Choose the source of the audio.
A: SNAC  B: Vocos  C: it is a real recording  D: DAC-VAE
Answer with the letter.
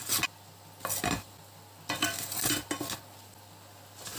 C